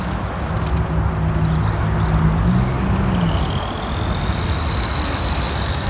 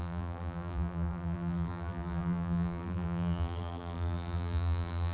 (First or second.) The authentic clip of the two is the first